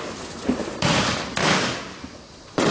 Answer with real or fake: real